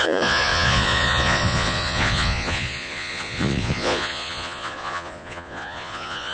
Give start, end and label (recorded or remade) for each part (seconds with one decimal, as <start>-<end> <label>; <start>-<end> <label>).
0.0-6.3 remade